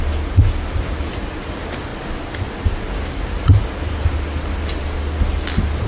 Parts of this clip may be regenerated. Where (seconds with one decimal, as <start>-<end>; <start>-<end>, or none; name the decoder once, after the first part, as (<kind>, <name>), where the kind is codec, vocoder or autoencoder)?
none